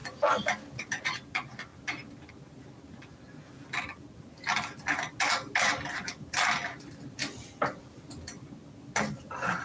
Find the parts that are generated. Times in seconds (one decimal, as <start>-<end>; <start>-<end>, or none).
none